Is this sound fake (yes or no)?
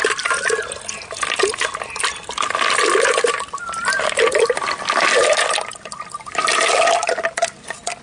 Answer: no